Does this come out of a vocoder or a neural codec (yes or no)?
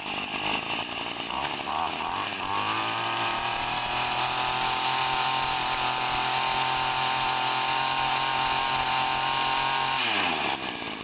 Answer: no